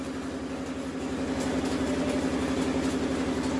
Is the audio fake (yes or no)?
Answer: no